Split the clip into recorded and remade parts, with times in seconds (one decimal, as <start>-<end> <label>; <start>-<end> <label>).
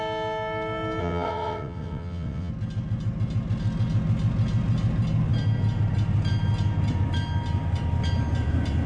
0.0-1.0 recorded; 1.0-2.5 remade; 2.5-8.9 recorded